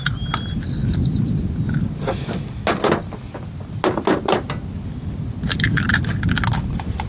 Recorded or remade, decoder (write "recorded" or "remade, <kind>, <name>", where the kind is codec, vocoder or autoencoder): recorded